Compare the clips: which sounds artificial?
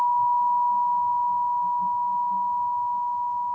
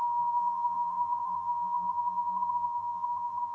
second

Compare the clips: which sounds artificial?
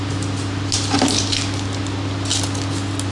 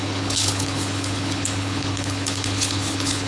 second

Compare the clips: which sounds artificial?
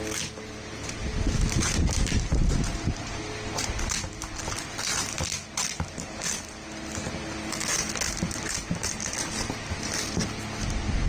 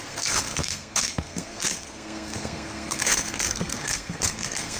second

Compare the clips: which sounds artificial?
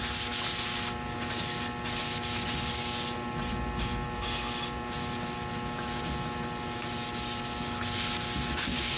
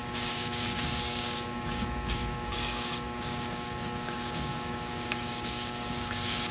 second